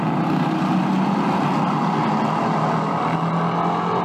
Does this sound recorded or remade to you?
recorded